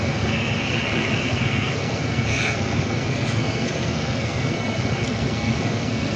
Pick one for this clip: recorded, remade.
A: remade